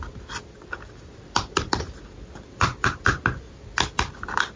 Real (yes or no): yes